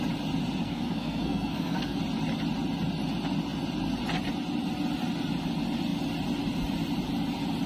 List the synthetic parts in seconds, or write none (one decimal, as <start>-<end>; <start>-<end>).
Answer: 0.6-2.0